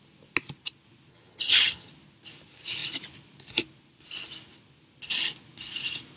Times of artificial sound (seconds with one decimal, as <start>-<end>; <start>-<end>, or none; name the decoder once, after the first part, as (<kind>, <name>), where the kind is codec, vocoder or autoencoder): 1.1-1.9 (vocoder, HiFi-GAN)